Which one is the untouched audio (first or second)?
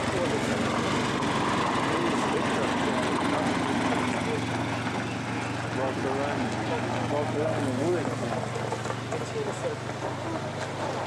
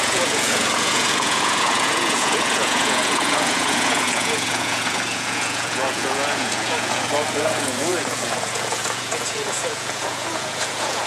first